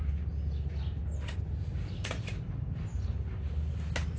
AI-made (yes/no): no